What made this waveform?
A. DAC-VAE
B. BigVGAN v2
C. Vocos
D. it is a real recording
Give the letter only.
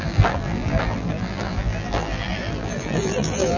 B